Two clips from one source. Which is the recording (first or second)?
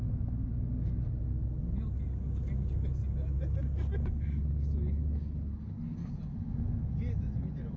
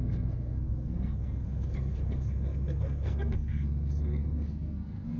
first